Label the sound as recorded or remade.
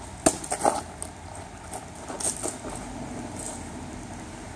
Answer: recorded